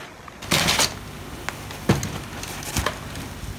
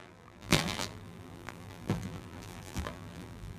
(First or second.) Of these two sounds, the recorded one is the first